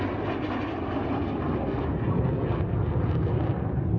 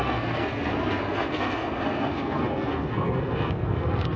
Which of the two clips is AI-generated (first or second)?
second